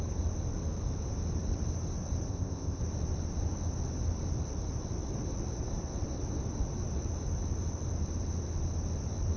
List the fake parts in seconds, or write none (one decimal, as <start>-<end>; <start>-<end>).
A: 2.3-2.8

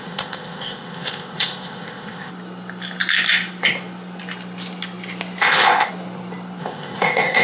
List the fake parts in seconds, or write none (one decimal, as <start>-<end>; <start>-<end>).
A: 0.0-2.3; 5.4-5.9; 6.6-7.4

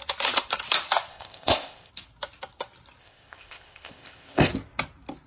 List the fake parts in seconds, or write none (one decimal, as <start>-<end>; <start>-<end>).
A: 1.1-1.9; 3.0-4.5

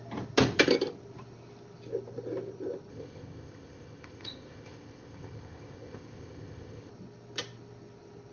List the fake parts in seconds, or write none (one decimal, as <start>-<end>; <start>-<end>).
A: 2.9-6.9

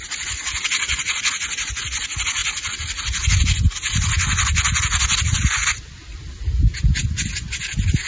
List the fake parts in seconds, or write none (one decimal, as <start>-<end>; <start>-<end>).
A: none

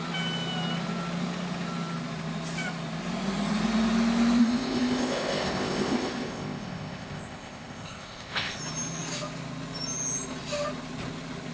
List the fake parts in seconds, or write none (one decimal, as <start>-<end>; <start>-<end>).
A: 4.4-8.6

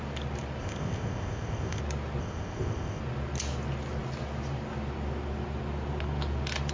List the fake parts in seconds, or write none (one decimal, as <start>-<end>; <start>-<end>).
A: 0.6-1.8; 2.2-3.0